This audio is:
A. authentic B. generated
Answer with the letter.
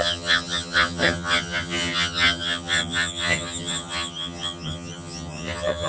B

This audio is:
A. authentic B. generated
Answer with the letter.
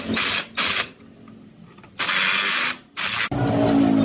A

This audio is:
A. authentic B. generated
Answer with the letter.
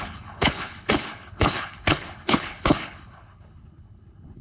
B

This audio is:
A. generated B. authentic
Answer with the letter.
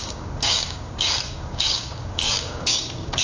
A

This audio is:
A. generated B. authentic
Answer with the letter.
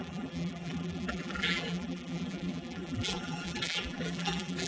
A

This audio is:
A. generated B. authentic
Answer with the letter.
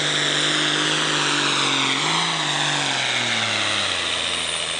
B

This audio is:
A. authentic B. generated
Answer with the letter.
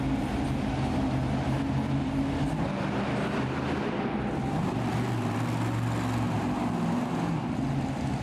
A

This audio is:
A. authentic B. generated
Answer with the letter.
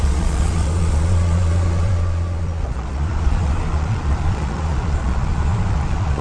B